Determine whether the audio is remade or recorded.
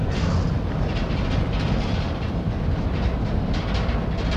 recorded